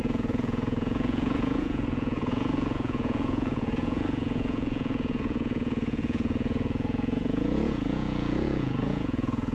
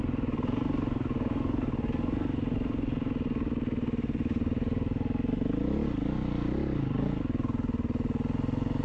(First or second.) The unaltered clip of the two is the second